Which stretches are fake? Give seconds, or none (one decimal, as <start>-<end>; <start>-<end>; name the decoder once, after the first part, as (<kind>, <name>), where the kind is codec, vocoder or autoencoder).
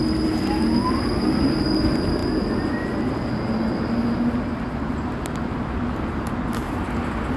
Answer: none